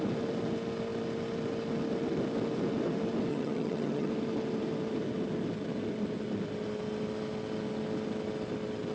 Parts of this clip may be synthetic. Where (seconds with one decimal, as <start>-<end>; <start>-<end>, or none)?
3.3-4.1